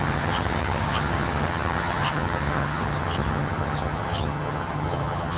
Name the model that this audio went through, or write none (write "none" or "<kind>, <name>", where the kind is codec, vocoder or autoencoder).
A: vocoder, HiFi-GAN